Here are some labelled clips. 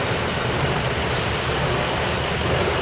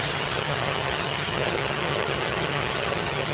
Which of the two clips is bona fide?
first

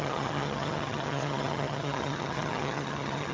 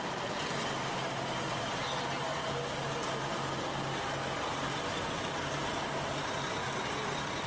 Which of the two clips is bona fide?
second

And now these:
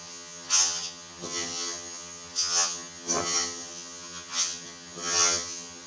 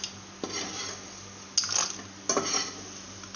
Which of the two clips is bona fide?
second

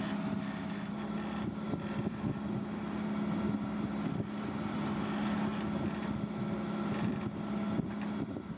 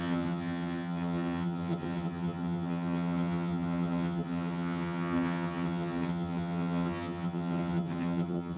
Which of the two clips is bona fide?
first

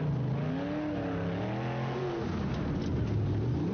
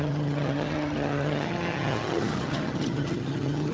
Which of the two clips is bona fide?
first